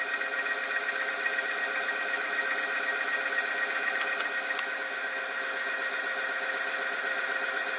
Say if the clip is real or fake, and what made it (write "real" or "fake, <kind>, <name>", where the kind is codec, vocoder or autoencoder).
real